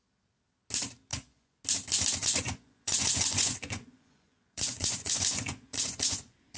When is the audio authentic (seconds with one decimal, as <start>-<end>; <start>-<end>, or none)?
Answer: 0.0-1.1; 1.6-2.2